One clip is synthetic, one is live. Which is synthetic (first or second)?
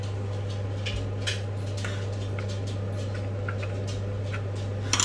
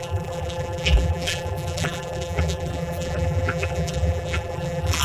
second